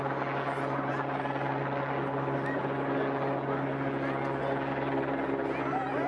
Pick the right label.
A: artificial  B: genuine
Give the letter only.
B